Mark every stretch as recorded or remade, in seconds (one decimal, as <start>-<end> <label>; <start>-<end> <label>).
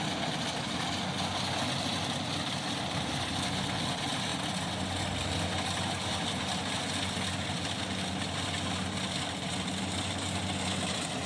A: 0.0-11.3 recorded